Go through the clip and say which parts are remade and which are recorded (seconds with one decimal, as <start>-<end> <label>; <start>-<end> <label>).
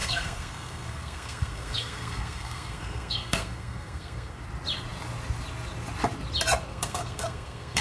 0.0-4.4 remade; 4.4-6.7 recorded; 6.7-7.8 remade